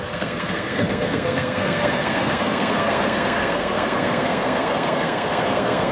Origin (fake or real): fake